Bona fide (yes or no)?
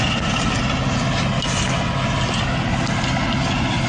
yes